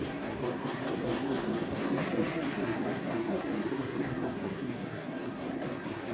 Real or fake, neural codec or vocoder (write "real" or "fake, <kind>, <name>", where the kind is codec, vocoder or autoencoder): fake, codec, SNAC